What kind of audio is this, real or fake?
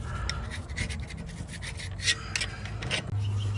real